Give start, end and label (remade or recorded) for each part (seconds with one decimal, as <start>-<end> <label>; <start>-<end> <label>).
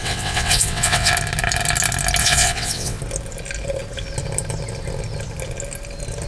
0.0-1.1 remade; 1.1-2.2 recorded; 2.2-3.0 remade; 3.0-6.3 recorded